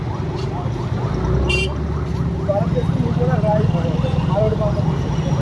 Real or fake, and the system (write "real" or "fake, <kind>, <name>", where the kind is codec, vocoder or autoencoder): real